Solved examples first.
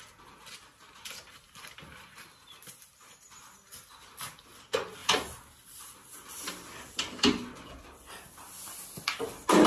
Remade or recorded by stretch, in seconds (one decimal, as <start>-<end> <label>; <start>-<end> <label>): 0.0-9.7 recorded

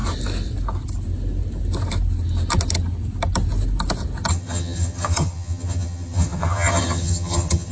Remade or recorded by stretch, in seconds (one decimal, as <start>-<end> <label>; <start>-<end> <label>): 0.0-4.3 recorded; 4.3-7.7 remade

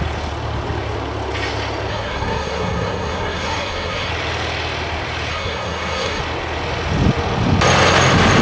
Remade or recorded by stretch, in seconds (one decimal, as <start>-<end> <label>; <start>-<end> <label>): 0.0-1.9 recorded; 1.9-4.1 remade; 4.1-5.3 recorded; 5.3-6.2 remade; 6.2-8.4 recorded

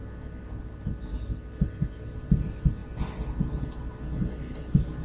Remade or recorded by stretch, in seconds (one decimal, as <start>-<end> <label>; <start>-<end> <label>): 0.0-5.0 recorded

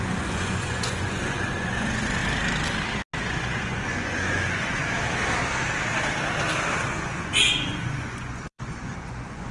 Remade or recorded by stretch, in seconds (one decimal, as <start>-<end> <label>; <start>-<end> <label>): 0.0-2.2 remade; 2.2-3.2 recorded; 3.2-4.8 remade; 4.8-6.8 recorded; 6.8-9.5 remade

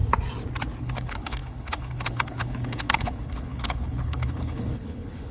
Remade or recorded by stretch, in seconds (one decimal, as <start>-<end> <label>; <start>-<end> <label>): 0.0-0.8 recorded; 0.8-5.3 remade